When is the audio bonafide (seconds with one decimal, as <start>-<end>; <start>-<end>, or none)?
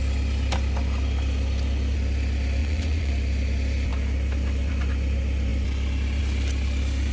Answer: 0.0-2.6; 3.1-7.1